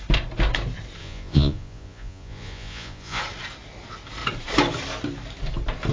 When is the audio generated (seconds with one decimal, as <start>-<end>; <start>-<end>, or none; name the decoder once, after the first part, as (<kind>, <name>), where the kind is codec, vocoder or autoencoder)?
1.0-3.2 (vocoder, Vocos)